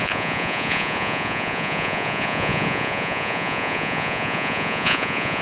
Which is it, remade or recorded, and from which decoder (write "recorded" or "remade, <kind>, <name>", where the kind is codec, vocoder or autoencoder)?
remade, vocoder, Vocos